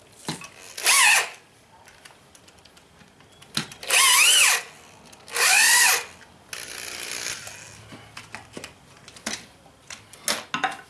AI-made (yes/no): no